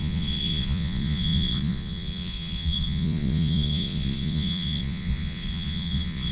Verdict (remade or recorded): remade